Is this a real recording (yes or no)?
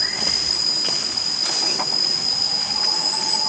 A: yes